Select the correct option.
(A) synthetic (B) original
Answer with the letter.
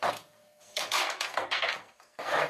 A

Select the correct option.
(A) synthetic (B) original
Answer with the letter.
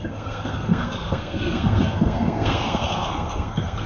A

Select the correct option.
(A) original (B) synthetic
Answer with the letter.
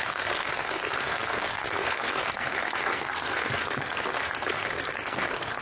B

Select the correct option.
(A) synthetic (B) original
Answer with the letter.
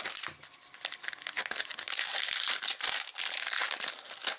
B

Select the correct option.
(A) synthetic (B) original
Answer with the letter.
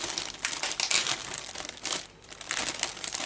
B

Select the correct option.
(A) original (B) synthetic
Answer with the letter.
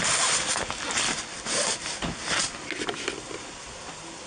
A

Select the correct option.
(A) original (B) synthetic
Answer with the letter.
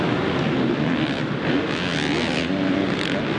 A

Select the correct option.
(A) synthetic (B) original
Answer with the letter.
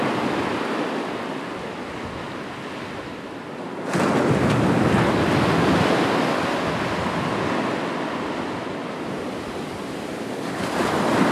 B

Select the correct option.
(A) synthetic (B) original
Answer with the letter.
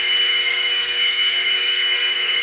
A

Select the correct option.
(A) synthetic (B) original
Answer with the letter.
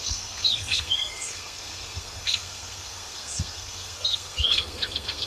A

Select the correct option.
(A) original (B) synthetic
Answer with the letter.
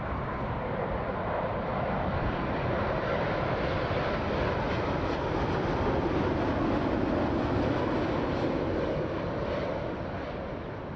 A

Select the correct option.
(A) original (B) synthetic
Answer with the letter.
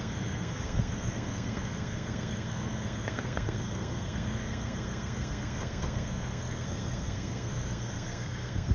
B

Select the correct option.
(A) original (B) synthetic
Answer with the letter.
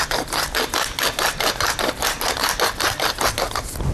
A